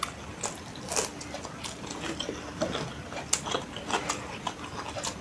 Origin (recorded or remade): recorded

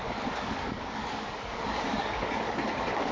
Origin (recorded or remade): remade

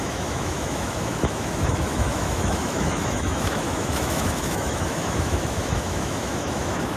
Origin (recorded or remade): remade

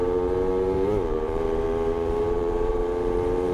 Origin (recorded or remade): remade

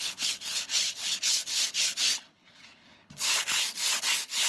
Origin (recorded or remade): remade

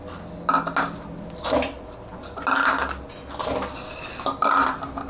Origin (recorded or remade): recorded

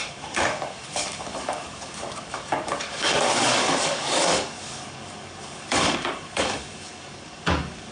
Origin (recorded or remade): remade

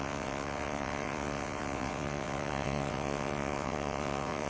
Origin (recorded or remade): remade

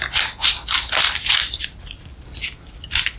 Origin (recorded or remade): recorded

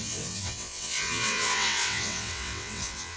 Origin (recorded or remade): remade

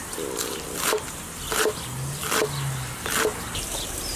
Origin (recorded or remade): recorded